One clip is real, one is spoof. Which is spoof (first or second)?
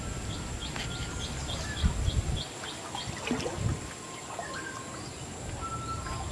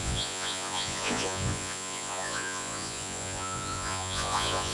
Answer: second